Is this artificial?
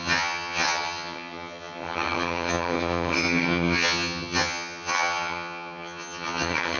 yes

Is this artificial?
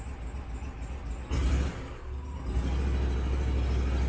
no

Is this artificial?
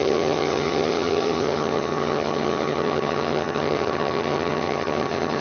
yes